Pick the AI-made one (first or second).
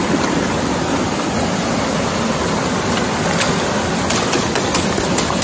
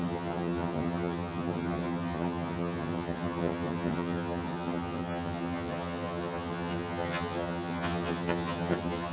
second